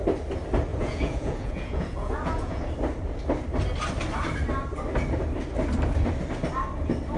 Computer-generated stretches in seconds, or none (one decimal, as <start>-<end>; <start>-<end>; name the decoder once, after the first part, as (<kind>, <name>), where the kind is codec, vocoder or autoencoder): 0.7-2.6 (vocoder, Vocos)